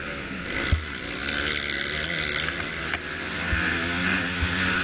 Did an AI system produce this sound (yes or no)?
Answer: no